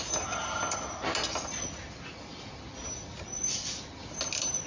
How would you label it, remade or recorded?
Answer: recorded